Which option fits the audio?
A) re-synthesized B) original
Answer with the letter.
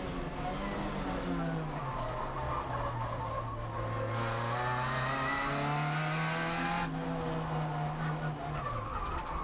B